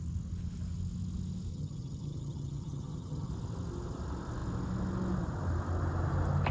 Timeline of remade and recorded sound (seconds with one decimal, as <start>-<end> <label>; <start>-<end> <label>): 0.0-1.5 recorded; 1.5-3.3 remade; 3.3-6.5 recorded